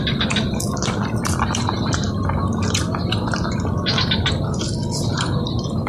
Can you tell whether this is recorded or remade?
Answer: recorded